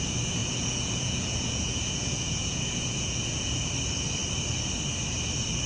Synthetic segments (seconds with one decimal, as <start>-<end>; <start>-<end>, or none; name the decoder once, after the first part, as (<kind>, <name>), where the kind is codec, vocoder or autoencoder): 0.4-3.7 (vocoder, Vocos)